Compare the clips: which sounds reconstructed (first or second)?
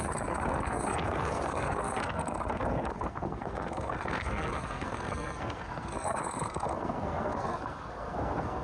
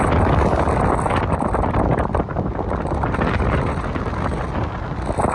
first